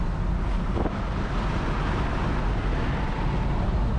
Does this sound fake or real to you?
real